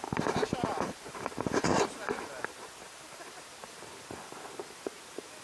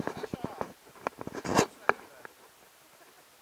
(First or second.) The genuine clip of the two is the second